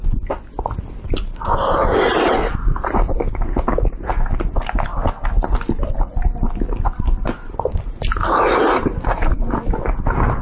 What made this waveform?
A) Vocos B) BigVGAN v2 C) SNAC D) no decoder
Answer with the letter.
D